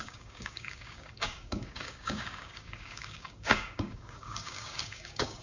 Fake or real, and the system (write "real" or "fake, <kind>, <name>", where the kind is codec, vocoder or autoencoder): fake, codec, DAC